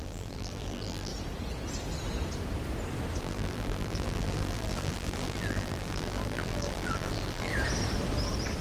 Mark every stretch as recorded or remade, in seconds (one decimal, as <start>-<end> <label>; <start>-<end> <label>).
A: 0.0-1.1 remade; 1.1-3.2 recorded; 3.2-7.5 remade; 7.5-8.6 recorded